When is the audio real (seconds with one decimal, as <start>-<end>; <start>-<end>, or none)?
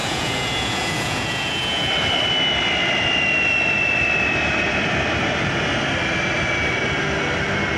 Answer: 1.9-7.8